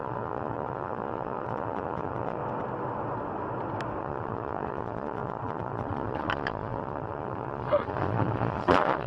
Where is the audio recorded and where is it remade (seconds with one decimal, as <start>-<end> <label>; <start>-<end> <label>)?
0.0-2.4 remade; 2.4-4.0 recorded; 4.0-9.1 remade